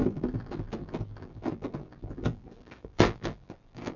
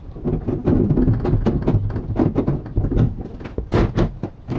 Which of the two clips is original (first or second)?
second